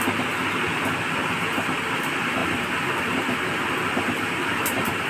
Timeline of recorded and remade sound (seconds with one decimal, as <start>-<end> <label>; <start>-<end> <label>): 0.0-2.4 recorded; 2.4-5.1 remade